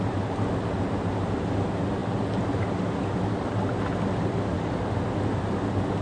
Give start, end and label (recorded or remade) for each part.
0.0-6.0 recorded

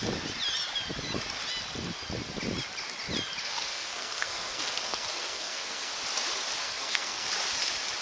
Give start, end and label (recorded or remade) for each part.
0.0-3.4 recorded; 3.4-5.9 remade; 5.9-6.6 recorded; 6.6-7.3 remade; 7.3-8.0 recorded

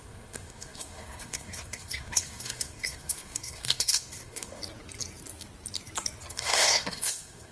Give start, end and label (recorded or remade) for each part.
0.0-4.6 remade; 4.6-6.3 recorded; 6.3-7.5 remade

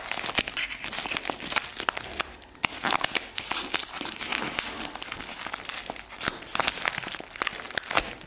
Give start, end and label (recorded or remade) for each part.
0.0-8.3 recorded